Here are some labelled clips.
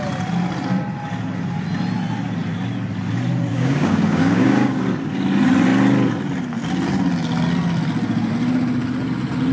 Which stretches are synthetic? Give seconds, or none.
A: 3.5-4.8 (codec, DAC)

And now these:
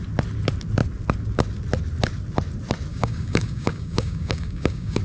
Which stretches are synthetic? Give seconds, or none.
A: 2.9-5.0 (codec, DAC)

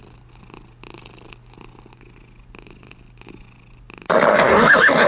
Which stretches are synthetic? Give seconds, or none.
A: 4.3-5.1 (codec, DAC)

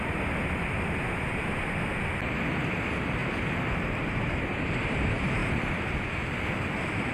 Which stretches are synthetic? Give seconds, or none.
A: none

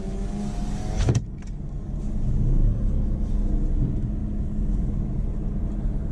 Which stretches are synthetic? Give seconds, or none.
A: 0.4-1.0 (codec, DAC); 2.6-3.4

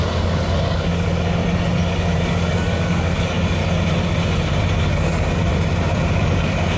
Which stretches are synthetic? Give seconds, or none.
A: 0.0-1.4 (codec, DAC); 2.2-3.6; 4.8-5.5; 6.1-6.8